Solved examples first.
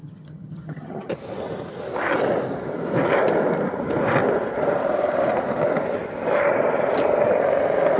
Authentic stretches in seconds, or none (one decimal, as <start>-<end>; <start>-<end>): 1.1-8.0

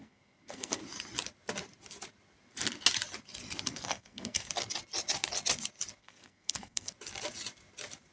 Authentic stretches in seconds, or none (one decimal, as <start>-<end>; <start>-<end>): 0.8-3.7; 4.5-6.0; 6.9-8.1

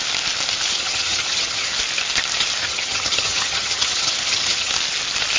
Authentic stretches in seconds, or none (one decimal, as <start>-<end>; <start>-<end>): 0.0-0.7; 1.7-2.6; 4.7-5.4

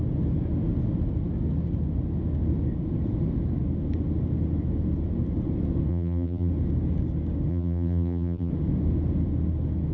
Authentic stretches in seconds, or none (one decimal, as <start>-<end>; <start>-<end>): 0.0-5.9; 6.5-7.5; 8.5-9.9